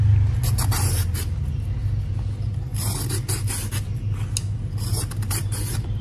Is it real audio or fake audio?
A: real